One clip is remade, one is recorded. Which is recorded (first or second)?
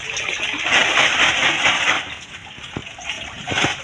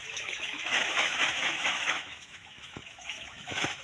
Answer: first